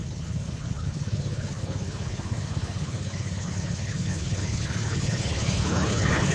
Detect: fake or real fake